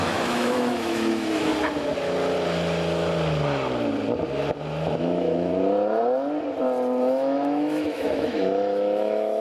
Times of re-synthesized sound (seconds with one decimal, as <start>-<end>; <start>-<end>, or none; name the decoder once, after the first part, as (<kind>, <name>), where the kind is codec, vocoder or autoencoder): 0.0-1.5 (autoencoder, DAC-VAE); 5.0-5.5; 7.0-9.4

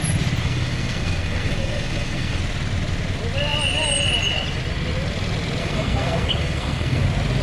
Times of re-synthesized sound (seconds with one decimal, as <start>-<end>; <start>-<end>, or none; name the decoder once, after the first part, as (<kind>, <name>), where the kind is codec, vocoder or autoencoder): 0.4-2.4 (codec, SNAC); 5.6-7.0

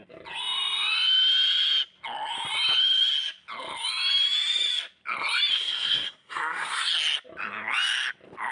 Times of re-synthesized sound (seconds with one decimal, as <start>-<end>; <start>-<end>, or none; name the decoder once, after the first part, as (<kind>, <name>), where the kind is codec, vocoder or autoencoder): 5.5-6.9 (codec, SNAC)